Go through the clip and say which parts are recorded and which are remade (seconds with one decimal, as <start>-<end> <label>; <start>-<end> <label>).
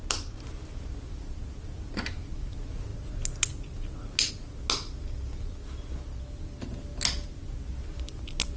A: 0.0-8.6 recorded